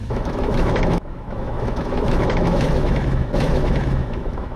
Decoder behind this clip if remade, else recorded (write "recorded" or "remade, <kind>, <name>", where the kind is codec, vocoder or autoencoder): remade, autoencoder, DAC-VAE